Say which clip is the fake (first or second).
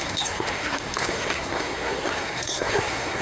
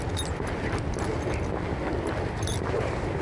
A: first